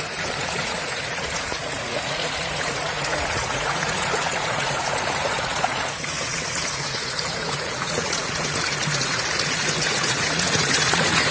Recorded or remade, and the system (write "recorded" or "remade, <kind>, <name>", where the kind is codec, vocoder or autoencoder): remade, vocoder, Vocos